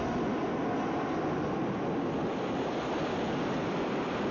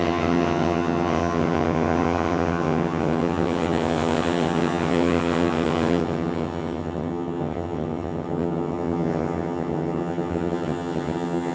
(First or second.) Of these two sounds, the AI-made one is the second